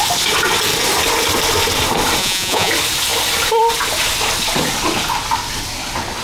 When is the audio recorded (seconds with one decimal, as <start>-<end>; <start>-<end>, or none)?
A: 0.0-2.2; 2.7-6.2